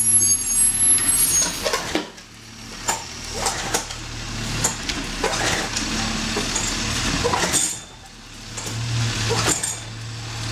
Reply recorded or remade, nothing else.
recorded